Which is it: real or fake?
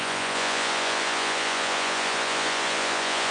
fake